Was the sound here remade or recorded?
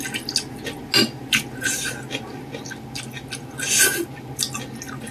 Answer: recorded